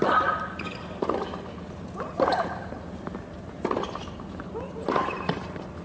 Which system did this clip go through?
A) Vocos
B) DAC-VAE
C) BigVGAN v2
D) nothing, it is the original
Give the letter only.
D